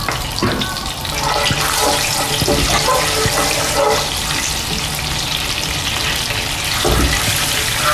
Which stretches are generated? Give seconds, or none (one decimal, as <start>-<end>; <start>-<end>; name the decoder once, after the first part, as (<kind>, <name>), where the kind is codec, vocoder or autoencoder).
none